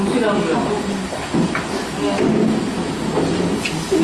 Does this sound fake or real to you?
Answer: real